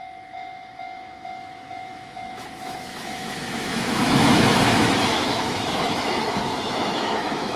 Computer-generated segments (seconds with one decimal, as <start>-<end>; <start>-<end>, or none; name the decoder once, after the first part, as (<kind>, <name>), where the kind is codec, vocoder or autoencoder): 0.0-7.6 (autoencoder, DAC-VAE)